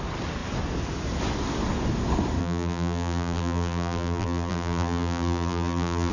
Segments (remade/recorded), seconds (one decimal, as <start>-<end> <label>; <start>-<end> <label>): 0.0-2.4 recorded; 2.4-6.1 remade